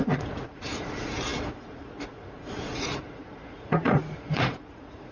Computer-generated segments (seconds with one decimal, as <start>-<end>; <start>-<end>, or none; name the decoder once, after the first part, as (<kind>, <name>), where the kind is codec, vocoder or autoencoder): 0.0-5.1 (vocoder, Vocos)